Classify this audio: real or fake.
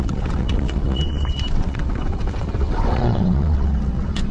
fake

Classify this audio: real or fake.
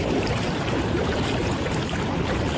fake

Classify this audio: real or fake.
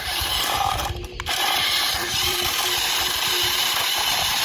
fake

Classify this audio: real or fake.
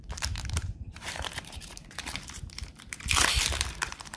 fake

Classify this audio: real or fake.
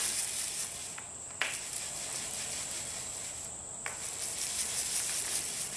real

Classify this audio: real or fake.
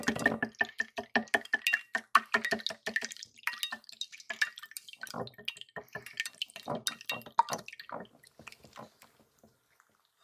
real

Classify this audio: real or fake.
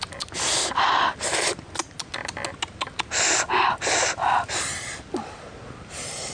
real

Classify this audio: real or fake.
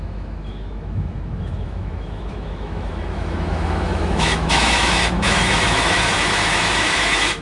fake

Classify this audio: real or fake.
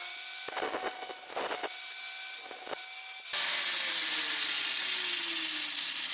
real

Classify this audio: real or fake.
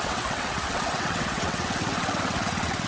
fake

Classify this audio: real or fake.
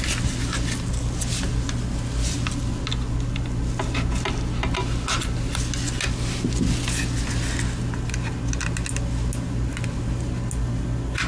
real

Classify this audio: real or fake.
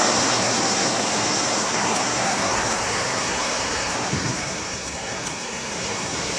fake